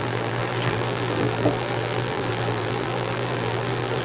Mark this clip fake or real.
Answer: fake